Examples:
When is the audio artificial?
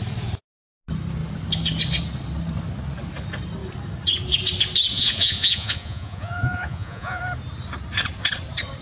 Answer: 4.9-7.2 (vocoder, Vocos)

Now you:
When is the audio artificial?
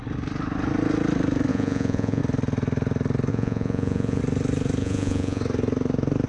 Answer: 1.5-2.2 (vocoder, Vocos); 3.3-4.2; 4.8-5.4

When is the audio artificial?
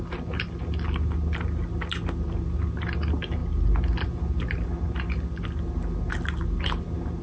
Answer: none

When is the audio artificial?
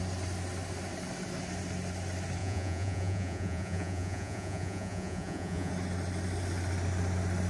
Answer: 2.4-5.7 (vocoder, Vocos)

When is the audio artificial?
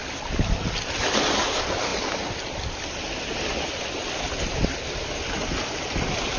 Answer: none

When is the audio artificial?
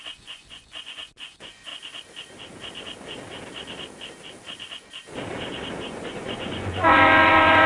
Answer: 0.0-1.7 (vocoder, Vocos); 5.8-7.7